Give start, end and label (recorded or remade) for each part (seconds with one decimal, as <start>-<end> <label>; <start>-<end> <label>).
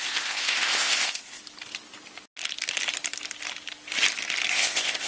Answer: 0.0-1.4 remade; 1.4-4.5 recorded; 4.5-5.1 remade